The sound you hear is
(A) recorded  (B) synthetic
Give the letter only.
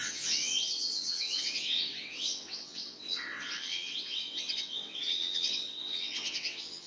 B